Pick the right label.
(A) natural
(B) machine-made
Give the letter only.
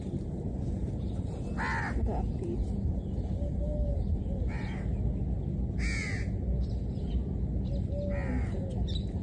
A